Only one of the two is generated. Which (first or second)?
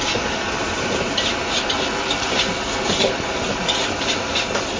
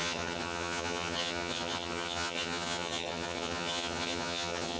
second